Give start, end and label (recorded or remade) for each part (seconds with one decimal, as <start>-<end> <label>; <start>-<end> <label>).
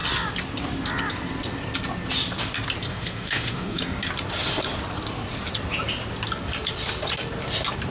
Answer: 0.0-2.9 recorded; 2.9-3.8 remade; 3.8-7.9 recorded